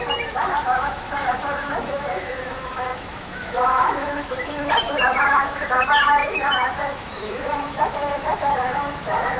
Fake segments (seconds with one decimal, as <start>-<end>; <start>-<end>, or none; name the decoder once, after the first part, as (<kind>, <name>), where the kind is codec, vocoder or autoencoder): 0.0-9.4 (autoencoder, DAC-VAE)

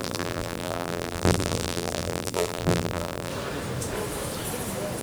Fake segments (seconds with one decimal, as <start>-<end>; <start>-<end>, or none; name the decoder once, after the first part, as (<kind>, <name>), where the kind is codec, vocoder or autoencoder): 0.0-3.3 (vocoder, BigVGAN v2)

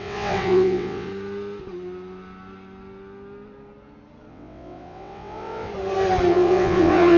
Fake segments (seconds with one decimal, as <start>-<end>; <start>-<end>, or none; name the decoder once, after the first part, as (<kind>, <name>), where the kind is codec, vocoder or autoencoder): 0.0-1.1 (vocoder, WaveNeXt); 4.3-5.7; 6.3-7.2

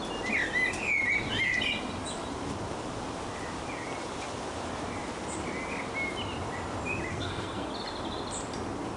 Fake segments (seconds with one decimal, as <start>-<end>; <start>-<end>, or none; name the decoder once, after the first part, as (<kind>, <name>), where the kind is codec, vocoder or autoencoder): 7.1-7.7 (codec, SNAC)

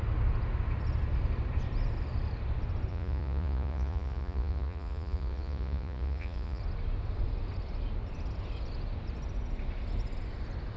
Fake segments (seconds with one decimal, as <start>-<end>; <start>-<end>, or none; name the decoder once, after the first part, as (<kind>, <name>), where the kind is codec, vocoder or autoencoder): 2.9-6.6 (vocoder, Vocos)

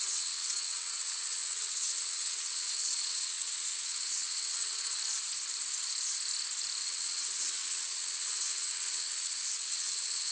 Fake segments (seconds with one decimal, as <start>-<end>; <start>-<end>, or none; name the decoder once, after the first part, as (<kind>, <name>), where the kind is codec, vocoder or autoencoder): 0.0-5.0 (vocoder, WaveNeXt); 6.8-10.3

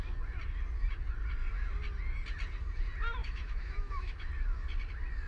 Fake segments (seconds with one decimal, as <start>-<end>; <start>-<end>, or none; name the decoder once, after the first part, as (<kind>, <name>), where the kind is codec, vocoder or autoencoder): 3.2-4.3 (autoencoder, DAC-VAE)